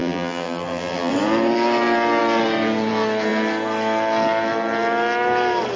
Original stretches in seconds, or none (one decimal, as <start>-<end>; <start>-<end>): 1.1-5.8